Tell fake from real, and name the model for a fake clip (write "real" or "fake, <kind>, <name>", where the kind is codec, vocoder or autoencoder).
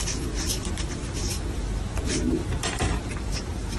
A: fake, vocoder, BigVGAN v2